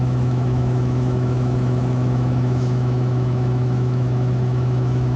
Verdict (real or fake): fake